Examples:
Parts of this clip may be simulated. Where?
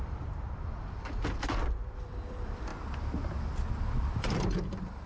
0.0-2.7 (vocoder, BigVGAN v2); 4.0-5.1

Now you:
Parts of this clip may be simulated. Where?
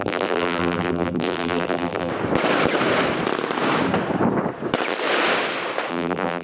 0.0-2.1 (vocoder, BigVGAN v2); 5.9-6.4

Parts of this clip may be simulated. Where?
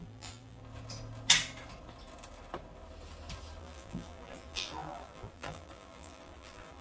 0.0-0.6 (vocoder, BigVGAN v2); 3.6-6.8